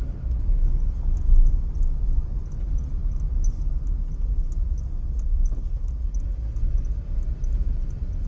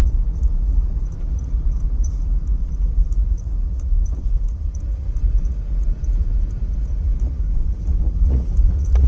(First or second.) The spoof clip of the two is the second